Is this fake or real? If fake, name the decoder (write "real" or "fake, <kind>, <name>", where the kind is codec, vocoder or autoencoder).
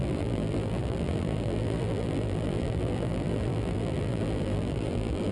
fake, vocoder, BigVGAN v2